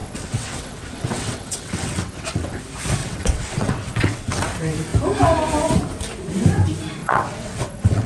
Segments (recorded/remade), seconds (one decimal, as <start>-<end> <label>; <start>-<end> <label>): 0.0-2.6 remade; 2.6-3.0 recorded; 3.0-4.5 remade; 4.5-7.0 recorded; 7.0-8.1 remade